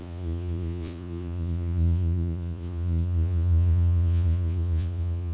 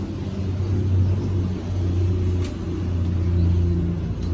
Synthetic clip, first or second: first